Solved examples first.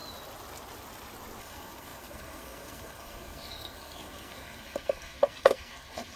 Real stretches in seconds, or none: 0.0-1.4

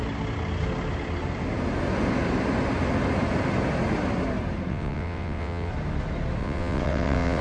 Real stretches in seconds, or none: 0.0-4.7; 5.7-6.4

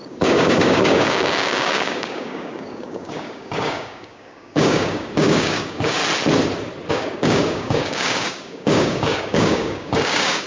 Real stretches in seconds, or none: 6.0-6.9